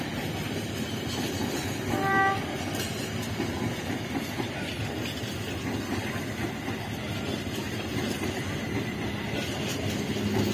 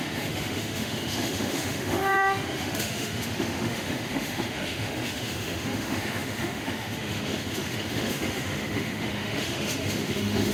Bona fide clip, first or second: first